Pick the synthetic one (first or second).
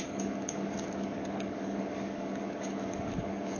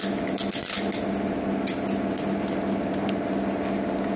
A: first